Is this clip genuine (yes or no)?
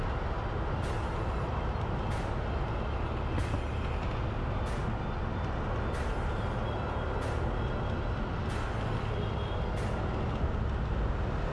yes